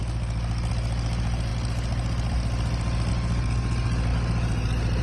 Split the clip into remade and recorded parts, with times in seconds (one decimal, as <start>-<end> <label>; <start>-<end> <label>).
0.0-5.0 recorded